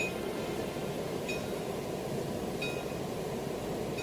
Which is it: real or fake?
real